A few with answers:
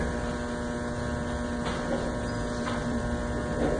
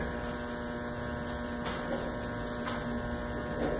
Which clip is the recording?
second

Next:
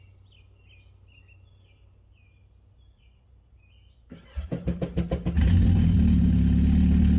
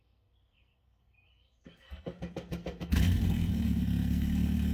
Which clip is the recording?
first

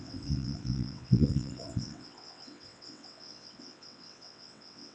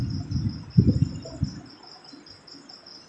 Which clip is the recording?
second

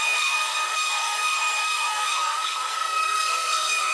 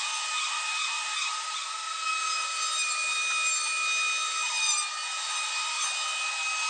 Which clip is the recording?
second